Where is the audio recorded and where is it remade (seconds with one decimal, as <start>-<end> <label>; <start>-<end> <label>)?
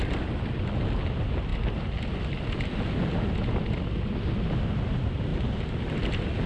0.0-1.5 recorded; 1.5-2.2 remade; 2.2-6.5 recorded